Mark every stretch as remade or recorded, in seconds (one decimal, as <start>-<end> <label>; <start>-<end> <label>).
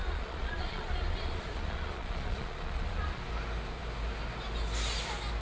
0.0-3.2 remade; 3.2-5.4 recorded